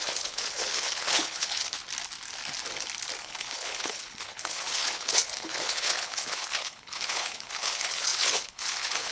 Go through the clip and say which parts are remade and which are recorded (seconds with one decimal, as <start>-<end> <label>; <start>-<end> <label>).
0.0-1.8 remade; 1.8-3.2 recorded; 3.2-9.1 remade